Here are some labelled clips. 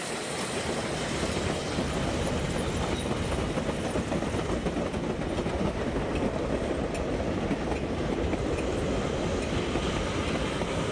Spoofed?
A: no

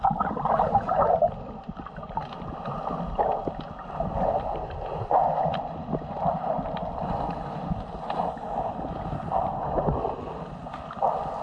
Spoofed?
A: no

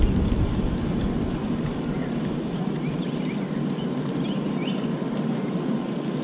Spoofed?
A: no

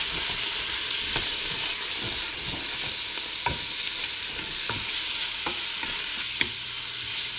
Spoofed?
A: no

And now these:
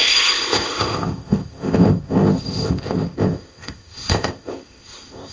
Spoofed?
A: yes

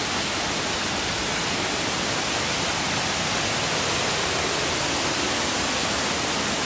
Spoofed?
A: no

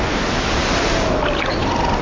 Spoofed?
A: no